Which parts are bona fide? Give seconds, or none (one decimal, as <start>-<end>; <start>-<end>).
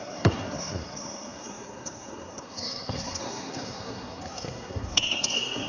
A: none